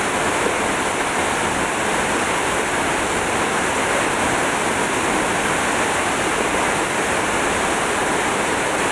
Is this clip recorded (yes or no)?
yes